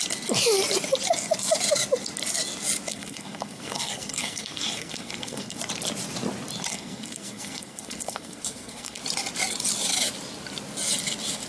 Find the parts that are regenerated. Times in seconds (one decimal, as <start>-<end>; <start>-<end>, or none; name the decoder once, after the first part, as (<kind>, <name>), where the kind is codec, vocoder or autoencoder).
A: 2.9-5.6 (codec, SNAC); 6.7-9.0